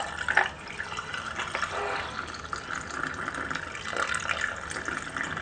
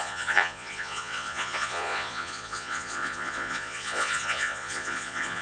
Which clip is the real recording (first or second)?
first